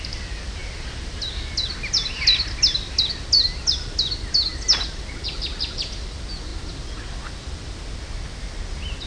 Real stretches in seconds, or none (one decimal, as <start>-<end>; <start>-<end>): 0.0-9.1